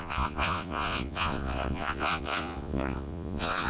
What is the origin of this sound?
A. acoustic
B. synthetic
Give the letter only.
B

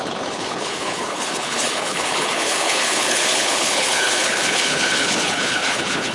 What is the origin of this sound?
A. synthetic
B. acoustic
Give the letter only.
A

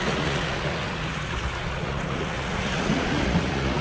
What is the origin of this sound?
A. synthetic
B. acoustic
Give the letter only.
A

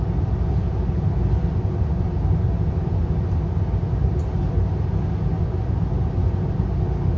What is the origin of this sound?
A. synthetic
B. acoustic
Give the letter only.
B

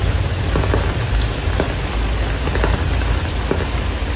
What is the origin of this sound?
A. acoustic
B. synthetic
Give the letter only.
A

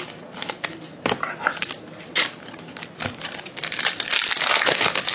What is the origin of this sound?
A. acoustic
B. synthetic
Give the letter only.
A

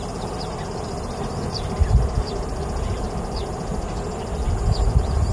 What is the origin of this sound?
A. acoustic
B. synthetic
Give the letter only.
A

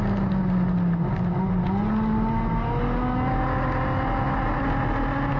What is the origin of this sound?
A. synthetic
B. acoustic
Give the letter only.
B